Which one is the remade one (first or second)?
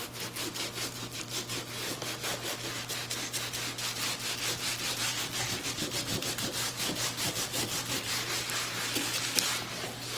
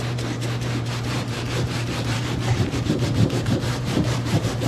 second